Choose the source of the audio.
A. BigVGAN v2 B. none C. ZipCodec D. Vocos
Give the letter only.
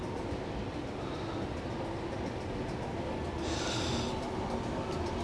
B